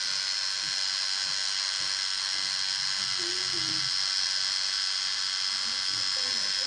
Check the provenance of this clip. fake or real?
real